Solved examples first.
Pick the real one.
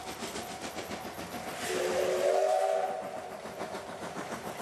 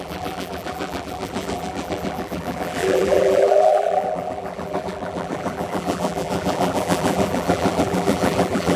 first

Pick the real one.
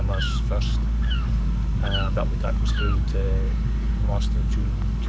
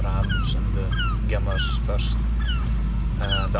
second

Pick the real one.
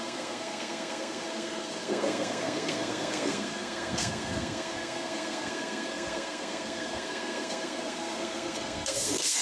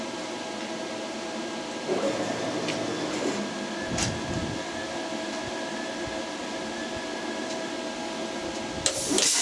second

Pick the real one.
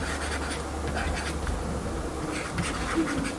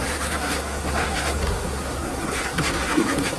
first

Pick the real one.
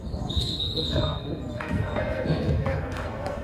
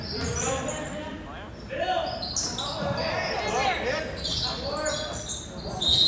second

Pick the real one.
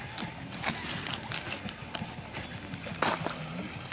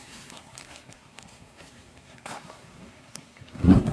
first